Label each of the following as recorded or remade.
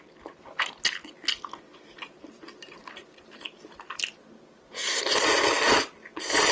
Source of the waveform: recorded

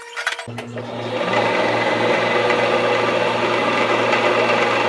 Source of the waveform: remade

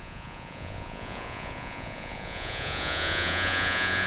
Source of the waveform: remade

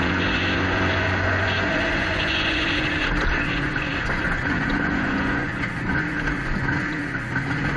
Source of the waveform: remade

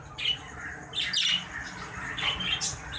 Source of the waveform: recorded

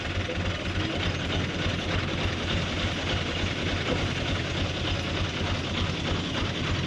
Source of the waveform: recorded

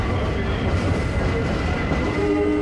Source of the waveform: recorded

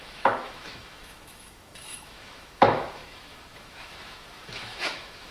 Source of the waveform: remade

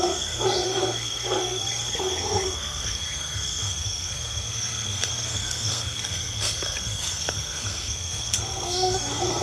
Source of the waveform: remade